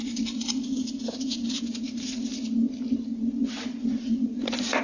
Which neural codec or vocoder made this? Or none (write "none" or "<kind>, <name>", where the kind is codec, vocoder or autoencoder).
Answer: none